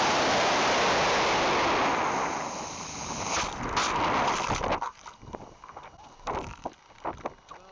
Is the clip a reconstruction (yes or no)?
no